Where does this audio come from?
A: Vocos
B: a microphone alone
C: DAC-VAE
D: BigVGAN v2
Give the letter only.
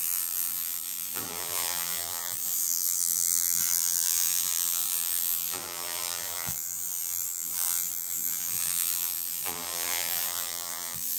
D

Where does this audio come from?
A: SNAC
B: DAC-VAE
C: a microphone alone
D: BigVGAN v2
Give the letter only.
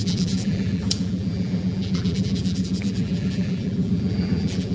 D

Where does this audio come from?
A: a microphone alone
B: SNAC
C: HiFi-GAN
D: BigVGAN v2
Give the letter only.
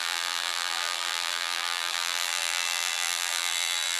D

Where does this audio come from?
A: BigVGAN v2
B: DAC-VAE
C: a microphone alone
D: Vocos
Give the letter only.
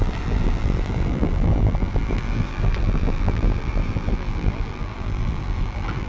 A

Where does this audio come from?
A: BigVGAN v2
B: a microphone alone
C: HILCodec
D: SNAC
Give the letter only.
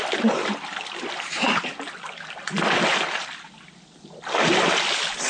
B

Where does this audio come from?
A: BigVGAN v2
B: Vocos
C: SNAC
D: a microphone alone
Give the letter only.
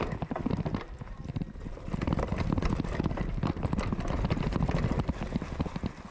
D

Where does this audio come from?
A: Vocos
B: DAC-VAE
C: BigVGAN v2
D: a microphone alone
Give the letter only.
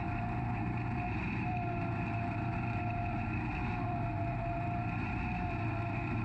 C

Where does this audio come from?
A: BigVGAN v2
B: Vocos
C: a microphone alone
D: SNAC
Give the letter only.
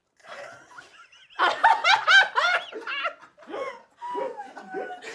C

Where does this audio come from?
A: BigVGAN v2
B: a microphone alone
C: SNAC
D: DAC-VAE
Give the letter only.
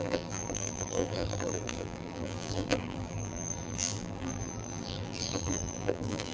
A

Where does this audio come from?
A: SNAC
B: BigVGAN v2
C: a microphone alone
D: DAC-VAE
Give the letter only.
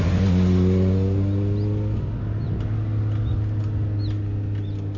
C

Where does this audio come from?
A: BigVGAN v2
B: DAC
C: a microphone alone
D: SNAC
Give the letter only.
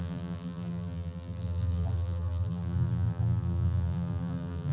A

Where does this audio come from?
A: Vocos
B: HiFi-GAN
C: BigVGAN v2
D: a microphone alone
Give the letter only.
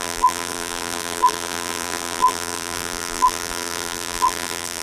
C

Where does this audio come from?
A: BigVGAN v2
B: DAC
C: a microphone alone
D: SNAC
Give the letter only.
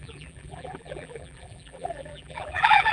A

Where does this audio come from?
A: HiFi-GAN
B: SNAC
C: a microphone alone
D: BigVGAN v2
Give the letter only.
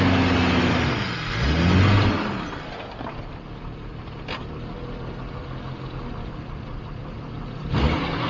C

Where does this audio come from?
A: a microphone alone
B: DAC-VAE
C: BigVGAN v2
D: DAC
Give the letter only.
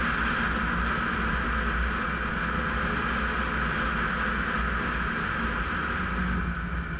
A